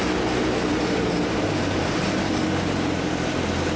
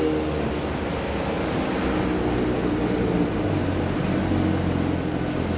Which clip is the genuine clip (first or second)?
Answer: second